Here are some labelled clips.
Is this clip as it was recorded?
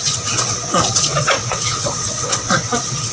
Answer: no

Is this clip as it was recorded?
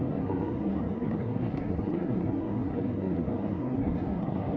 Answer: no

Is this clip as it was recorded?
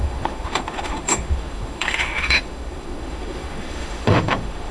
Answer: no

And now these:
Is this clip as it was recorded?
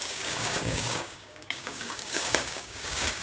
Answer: no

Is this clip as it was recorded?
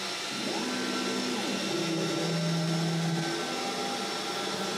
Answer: yes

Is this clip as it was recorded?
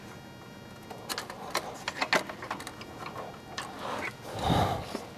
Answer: yes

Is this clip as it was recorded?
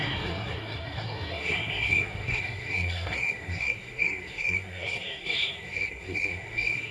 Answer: no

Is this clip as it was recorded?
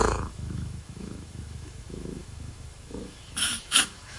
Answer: no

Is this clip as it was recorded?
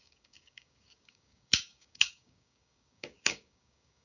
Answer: no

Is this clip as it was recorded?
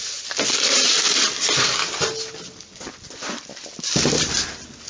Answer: yes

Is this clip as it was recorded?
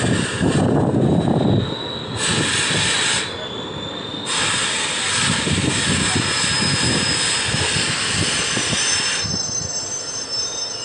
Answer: yes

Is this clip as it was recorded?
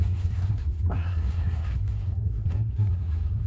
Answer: no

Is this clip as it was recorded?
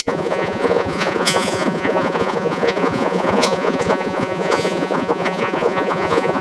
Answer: no